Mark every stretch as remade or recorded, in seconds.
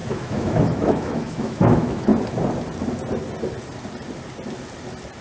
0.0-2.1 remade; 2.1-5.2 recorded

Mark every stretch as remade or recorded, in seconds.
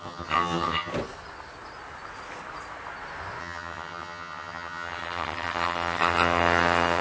0.0-0.9 remade; 0.9-3.4 recorded; 3.4-7.0 remade